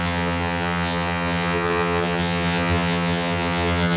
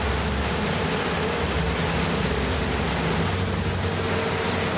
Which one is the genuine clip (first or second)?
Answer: second